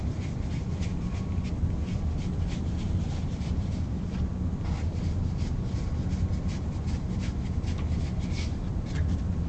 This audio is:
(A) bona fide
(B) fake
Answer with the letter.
A